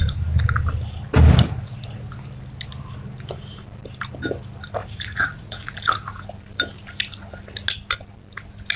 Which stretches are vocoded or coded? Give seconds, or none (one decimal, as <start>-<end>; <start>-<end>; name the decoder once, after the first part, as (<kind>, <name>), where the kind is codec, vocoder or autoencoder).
4.8-6.2 (vocoder, Vocos)